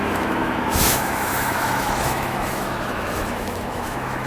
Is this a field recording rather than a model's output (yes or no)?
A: no